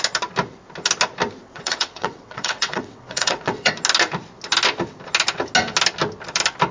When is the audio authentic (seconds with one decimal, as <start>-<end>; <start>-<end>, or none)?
0.0-1.4; 3.7-6.7